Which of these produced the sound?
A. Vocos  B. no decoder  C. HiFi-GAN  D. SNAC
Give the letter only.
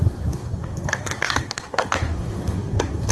D